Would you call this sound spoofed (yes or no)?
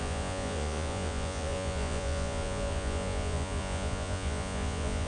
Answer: yes